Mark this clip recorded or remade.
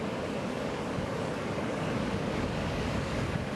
remade